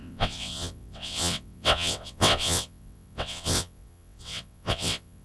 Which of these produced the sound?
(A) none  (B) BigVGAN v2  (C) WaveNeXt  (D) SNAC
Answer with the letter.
C